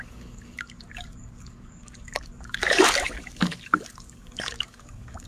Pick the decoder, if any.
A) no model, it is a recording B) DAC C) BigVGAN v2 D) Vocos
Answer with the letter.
B